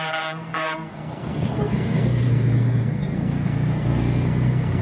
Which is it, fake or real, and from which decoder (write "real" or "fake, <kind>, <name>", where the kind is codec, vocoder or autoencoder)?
fake, codec, SNAC